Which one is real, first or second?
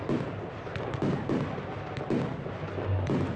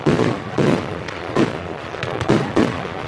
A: first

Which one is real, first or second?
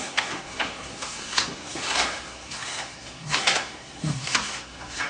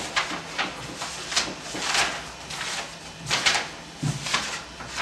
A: second